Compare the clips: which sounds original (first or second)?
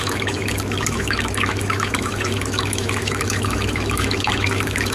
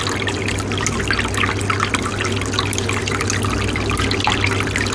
second